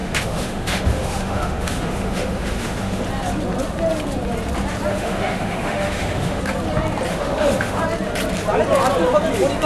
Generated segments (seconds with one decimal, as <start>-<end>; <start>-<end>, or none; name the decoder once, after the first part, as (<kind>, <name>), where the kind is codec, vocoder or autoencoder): 0.0-3.0 (autoencoder, DAC-VAE); 4.9-6.4; 7.1-7.8